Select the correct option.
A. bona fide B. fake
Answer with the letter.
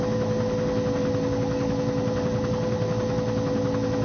A